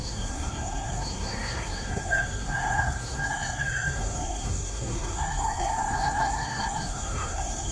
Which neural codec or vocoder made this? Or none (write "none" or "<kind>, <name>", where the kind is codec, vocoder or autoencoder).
codec, SNAC